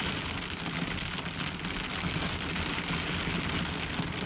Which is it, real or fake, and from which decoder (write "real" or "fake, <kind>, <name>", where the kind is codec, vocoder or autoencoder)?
real